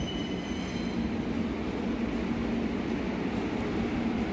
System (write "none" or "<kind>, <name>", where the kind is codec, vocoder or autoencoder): none